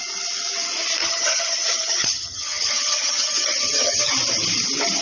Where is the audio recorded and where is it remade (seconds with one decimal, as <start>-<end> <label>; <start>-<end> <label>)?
0.0-1.0 recorded; 1.0-4.0 remade; 4.0-5.0 recorded